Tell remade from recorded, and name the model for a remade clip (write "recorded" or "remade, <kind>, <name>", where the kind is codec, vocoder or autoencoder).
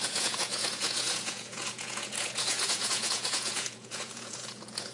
remade, vocoder, Vocos